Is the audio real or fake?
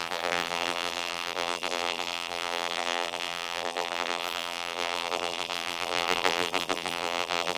fake